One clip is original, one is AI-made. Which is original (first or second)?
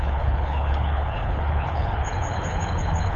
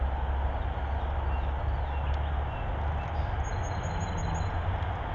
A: second